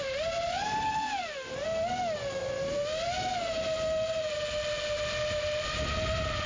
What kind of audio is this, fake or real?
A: real